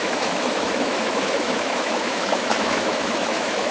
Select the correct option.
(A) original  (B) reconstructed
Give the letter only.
B